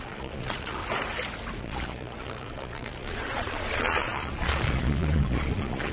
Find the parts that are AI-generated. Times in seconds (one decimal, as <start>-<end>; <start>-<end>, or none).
0.0-0.8; 1.6-5.9